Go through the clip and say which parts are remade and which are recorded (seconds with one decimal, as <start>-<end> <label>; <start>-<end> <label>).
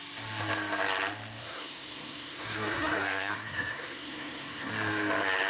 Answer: 0.0-1.4 recorded; 1.4-4.7 remade; 4.7-5.5 recorded